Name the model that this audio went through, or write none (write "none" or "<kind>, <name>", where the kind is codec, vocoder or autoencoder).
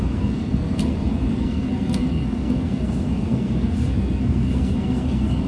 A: codec, SNAC